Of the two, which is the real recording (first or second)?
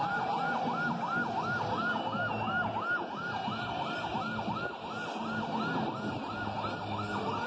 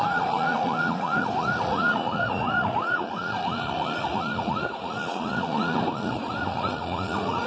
first